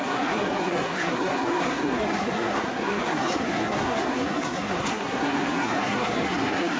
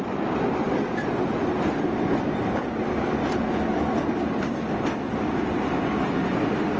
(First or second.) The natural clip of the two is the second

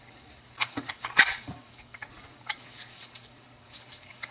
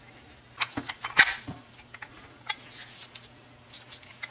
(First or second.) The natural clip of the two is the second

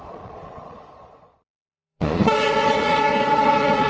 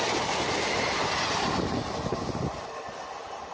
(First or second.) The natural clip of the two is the second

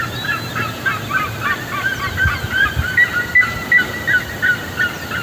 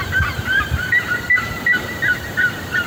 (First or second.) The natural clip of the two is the first